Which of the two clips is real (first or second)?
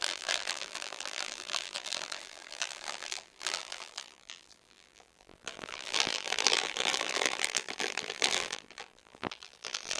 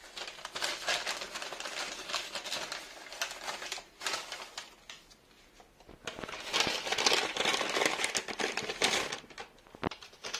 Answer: second